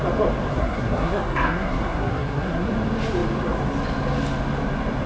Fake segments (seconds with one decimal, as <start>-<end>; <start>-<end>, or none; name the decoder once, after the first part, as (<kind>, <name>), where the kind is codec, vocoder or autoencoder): 0.5-2.7 (codec, SNAC)

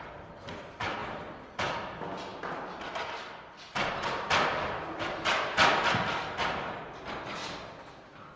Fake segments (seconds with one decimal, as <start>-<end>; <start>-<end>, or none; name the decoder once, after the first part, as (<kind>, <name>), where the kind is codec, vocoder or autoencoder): none

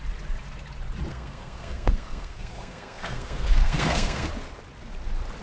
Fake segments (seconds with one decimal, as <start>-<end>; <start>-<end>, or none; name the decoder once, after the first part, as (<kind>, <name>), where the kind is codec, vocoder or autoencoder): 1.1-4.3 (codec, SNAC)